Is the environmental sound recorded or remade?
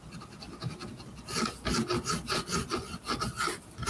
recorded